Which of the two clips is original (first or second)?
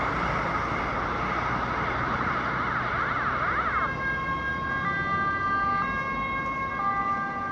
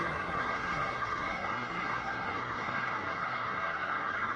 first